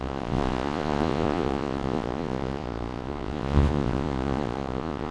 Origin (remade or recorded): remade